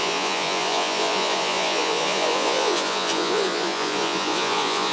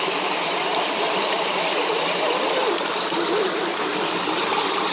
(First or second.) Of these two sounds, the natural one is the second